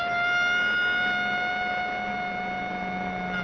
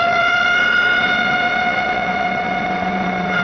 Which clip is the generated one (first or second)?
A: second